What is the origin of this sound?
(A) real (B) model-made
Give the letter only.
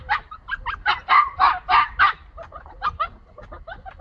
A